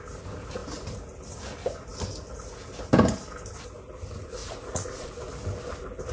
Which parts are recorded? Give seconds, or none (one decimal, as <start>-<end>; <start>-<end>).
0.0-4.4; 5.1-6.1